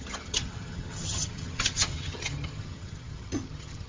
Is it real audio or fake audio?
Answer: fake